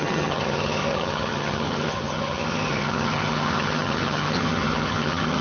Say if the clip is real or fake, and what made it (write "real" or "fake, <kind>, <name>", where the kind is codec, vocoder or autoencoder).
fake, vocoder, HiFi-GAN